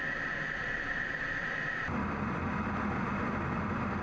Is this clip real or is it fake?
fake